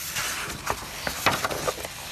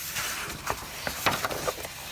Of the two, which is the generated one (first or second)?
second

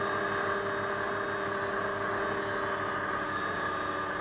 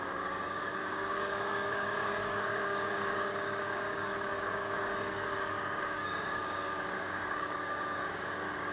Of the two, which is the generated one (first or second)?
second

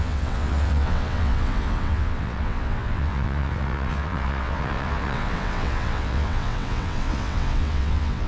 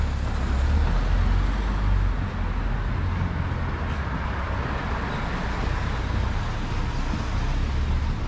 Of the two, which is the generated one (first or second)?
first